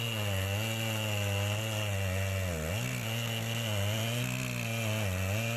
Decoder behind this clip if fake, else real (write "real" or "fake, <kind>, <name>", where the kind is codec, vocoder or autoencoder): real